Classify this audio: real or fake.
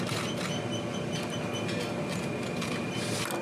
real